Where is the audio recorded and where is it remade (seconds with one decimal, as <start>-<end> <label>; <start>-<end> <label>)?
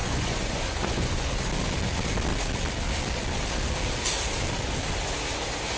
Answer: 0.0-1.3 remade; 1.3-5.8 recorded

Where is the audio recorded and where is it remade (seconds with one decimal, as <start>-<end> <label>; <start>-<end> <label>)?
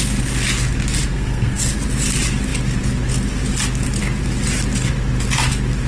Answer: 0.0-1.1 recorded; 1.1-1.6 remade; 1.6-5.9 recorded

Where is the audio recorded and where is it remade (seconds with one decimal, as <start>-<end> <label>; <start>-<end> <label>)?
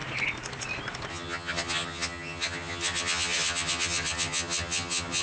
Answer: 0.0-1.1 recorded; 1.1-5.2 remade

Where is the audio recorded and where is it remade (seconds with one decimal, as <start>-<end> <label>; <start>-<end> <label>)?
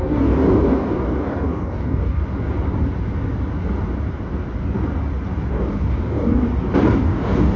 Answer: 0.0-2.2 remade; 2.2-5.5 recorded; 5.5-6.4 remade; 6.4-7.0 recorded; 7.0-7.6 remade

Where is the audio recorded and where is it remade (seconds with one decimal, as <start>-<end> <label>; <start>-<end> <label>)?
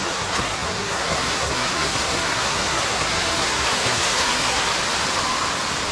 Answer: 0.0-4.7 remade; 4.7-5.9 recorded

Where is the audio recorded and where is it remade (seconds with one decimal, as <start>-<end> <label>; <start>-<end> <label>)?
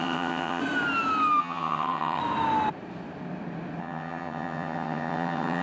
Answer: 0.0-0.6 remade; 0.6-1.4 recorded; 1.4-2.2 remade; 2.2-3.8 recorded; 3.8-5.6 remade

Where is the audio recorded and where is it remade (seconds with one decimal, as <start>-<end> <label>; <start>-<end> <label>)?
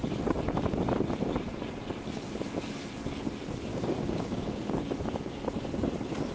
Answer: 0.0-3.7 recorded; 3.7-4.7 remade; 4.7-6.3 recorded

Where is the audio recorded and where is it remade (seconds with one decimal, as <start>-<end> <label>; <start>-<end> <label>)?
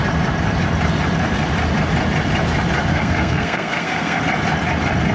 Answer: 0.0-2.9 recorded; 2.9-4.2 remade; 4.2-5.1 recorded